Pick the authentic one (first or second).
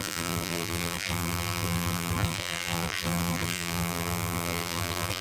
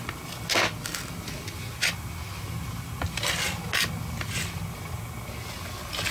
second